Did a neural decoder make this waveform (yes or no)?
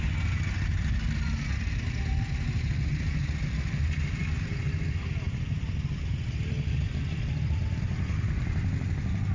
no